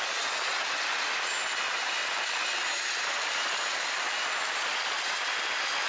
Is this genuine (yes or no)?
yes